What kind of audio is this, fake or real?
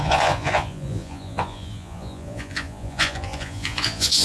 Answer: fake